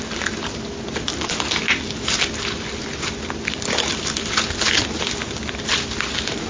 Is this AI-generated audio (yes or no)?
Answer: no